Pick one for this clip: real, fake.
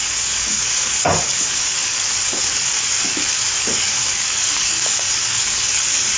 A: fake